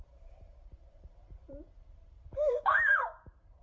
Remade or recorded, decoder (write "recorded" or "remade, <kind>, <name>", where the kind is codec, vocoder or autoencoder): remade, vocoder, BigVGAN v2